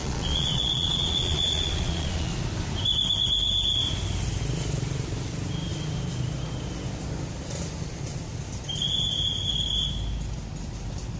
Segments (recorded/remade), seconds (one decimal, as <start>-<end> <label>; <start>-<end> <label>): 0.0-2.3 remade; 2.3-11.2 recorded